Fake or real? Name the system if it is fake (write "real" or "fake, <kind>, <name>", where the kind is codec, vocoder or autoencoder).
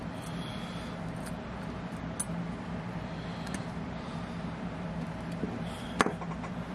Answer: real